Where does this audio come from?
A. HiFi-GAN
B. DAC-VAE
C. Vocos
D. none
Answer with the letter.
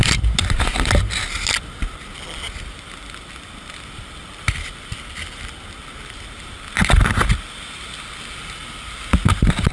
D